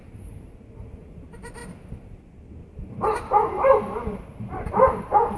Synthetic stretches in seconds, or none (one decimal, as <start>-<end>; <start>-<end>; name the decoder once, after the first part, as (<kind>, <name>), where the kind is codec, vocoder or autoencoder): none